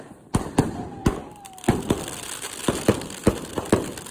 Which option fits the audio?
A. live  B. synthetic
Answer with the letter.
A